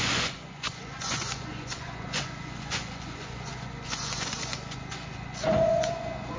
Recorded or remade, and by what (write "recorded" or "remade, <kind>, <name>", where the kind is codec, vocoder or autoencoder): remade, vocoder, Vocos